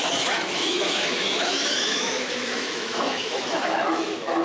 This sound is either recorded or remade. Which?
remade